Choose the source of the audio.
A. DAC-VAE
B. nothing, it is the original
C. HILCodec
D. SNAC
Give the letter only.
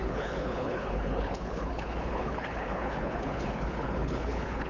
C